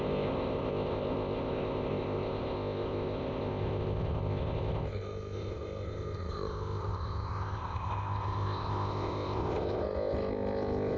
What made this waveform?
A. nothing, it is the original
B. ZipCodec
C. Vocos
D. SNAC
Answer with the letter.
B